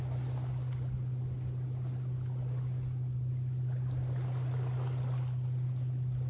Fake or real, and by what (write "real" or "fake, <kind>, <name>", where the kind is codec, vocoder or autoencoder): real